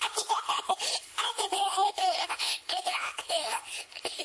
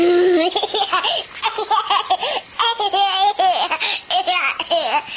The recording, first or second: second